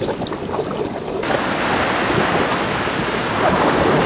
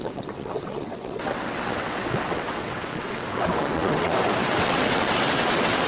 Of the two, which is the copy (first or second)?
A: second